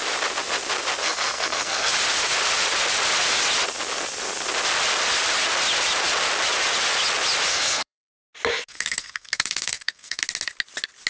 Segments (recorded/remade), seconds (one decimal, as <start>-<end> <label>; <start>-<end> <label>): 0.0-1.0 recorded; 1.0-1.9 remade; 1.9-7.5 recorded; 7.5-8.1 remade; 8.1-8.5 recorded; 8.5-10.2 remade; 10.2-11.1 recorded